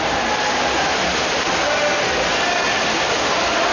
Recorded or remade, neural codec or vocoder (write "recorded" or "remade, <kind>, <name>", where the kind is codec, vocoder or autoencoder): recorded